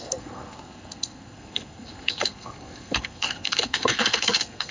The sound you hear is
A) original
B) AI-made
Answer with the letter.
B